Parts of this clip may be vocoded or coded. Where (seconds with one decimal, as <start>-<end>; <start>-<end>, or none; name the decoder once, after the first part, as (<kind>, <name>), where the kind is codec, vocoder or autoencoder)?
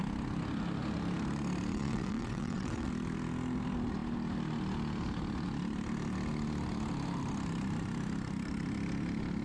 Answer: 1.7-2.9 (vocoder, WaveNeXt)